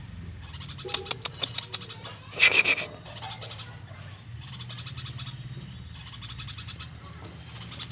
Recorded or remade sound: recorded